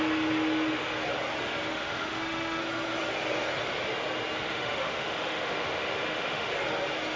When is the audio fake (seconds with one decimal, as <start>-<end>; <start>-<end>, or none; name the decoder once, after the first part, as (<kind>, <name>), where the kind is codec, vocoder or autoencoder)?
1.7-2.6 (autoencoder, DAC-VAE); 4.4-6.5